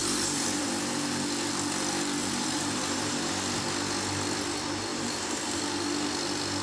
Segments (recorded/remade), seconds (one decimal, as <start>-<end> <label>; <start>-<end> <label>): 0.0-0.6 remade; 0.6-2.2 recorded; 2.2-3.3 remade; 3.3-4.9 recorded; 4.9-5.6 remade; 5.6-6.6 recorded